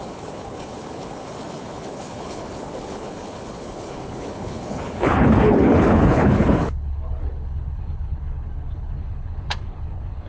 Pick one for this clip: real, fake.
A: fake